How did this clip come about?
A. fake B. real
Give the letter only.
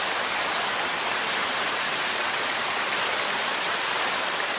B